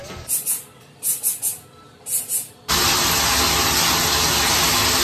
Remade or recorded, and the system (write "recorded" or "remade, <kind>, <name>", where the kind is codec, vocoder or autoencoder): recorded